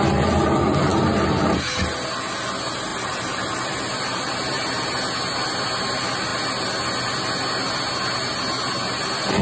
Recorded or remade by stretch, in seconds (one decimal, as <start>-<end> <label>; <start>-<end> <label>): 0.0-2.9 recorded; 2.9-4.0 remade; 4.0-9.4 recorded